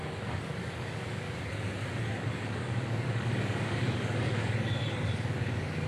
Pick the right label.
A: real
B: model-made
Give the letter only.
B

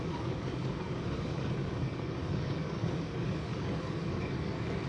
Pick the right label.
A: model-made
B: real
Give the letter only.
A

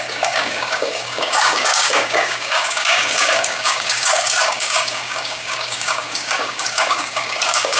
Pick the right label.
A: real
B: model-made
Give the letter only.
B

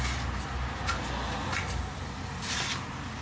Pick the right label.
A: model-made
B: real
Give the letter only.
B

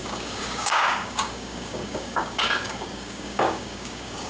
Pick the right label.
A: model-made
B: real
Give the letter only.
A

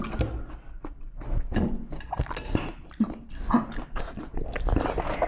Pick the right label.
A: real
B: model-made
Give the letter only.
A